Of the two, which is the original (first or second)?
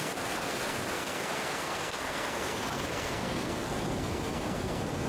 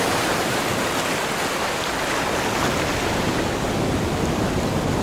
second